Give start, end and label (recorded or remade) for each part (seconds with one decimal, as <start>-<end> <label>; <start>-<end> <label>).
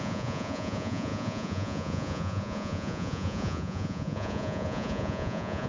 0.0-5.7 remade